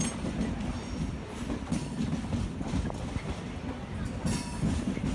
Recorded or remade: recorded